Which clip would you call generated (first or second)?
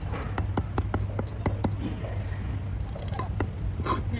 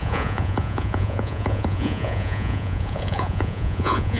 second